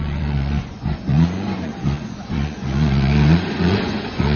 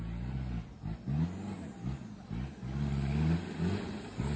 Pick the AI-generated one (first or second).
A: first